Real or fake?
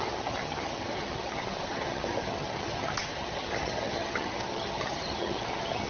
fake